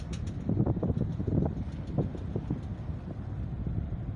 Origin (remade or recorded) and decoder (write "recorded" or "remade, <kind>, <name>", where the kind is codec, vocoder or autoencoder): recorded